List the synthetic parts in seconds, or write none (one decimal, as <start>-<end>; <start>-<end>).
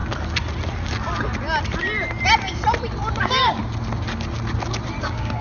3.2-3.6; 5.0-5.4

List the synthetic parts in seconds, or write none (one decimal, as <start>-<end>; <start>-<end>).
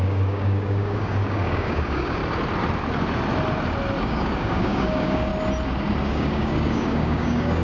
0.0-2.2; 4.0-5.3; 6.1-7.6